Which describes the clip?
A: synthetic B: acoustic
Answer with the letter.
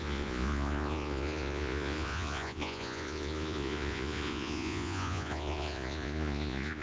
A